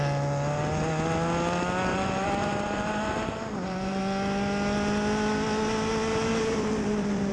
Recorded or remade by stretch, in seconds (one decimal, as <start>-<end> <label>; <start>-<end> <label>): 0.0-1.9 recorded; 1.9-4.0 remade; 4.0-6.1 recorded; 6.1-7.3 remade